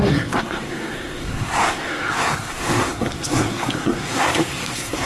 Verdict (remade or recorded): remade